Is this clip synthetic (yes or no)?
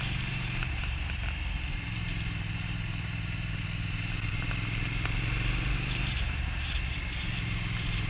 yes